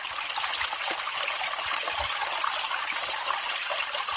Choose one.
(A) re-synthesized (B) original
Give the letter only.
B